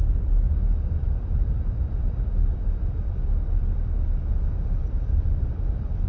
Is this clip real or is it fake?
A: fake